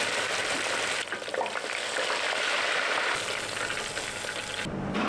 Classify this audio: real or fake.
real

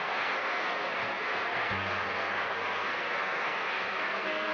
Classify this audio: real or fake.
fake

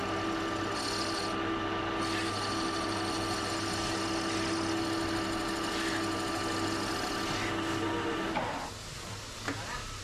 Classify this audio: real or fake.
real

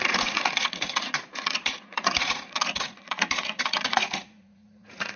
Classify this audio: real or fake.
fake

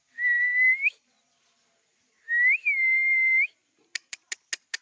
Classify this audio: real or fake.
real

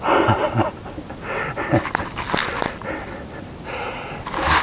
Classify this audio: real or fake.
real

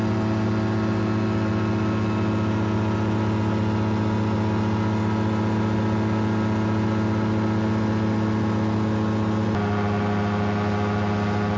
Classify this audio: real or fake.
real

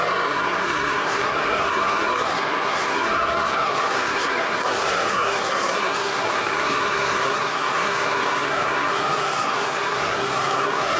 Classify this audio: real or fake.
fake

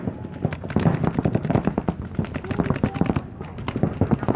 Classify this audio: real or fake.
real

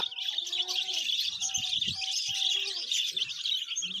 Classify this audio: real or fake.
real